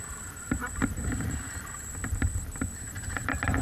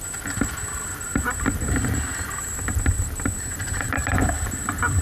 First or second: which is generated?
first